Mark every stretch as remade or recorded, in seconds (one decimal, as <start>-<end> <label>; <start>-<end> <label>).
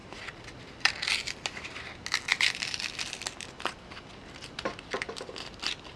0.0-1.3 remade; 1.3-2.3 recorded; 2.3-6.0 remade